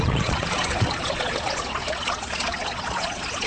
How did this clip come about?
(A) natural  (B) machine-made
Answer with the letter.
B